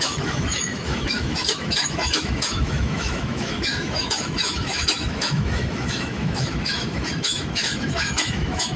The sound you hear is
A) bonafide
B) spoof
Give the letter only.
B